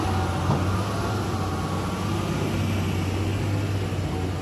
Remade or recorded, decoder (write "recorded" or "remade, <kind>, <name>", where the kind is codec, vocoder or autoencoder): recorded